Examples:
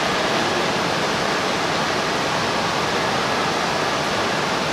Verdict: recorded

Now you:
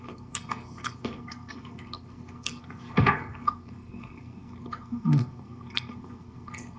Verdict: remade